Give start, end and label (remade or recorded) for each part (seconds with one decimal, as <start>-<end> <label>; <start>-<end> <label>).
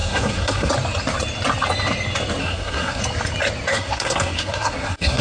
0.0-0.7 remade; 0.7-2.4 recorded; 2.4-3.0 remade; 3.0-3.7 recorded; 3.7-5.2 remade